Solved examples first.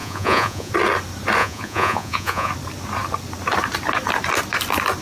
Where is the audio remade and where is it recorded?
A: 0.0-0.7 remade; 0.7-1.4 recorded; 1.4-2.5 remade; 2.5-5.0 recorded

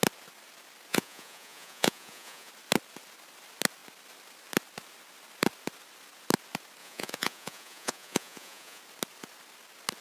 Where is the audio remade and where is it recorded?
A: 0.0-0.9 recorded; 0.9-2.5 remade; 2.5-6.8 recorded; 6.8-8.8 remade; 8.8-10.0 recorded

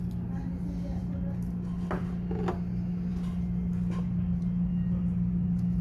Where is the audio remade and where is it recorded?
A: 0.0-5.8 recorded